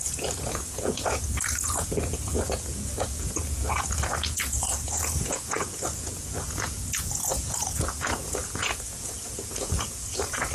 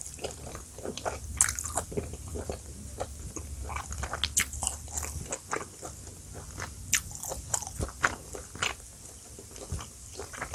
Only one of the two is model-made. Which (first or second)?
first